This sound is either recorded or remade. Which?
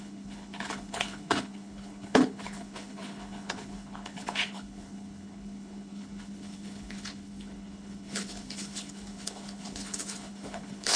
remade